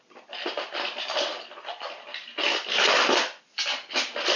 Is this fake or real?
fake